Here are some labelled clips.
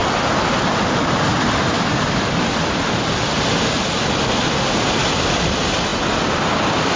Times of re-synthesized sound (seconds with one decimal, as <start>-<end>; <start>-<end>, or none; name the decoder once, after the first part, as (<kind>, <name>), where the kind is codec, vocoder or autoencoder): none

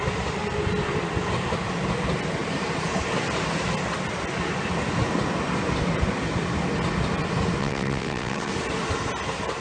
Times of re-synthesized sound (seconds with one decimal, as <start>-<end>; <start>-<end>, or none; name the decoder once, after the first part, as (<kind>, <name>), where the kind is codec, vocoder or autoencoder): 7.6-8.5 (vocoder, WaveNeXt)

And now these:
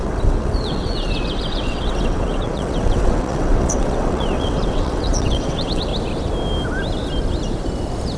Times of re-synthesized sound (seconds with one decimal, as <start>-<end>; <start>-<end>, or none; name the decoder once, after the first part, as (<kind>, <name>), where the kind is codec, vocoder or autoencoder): 0.0-5.9 (vocoder, WaveNeXt)

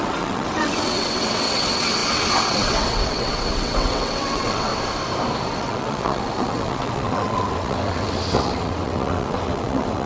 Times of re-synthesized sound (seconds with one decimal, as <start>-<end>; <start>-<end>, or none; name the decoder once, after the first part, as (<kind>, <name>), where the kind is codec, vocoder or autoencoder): 0.0-4.7 (vocoder, WaveNeXt); 5.4-10.1